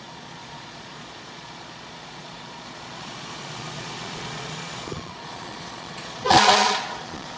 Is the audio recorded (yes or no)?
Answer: no